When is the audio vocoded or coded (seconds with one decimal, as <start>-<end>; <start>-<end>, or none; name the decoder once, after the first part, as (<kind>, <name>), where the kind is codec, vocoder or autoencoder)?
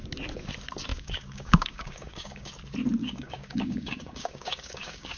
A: 0.9-2.5 (codec, DAC); 3.0-5.2